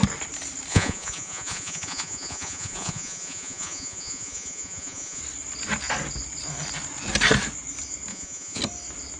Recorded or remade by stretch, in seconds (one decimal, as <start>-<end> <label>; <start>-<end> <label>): 0.0-0.7 recorded; 0.7-5.2 remade; 5.2-8.1 recorded; 8.1-8.6 remade; 8.6-9.2 recorded